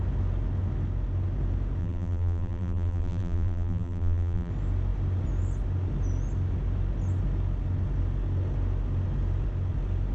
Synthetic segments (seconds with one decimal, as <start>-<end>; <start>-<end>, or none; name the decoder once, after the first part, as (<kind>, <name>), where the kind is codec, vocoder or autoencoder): 1.8-4.5 (vocoder, BigVGAN v2)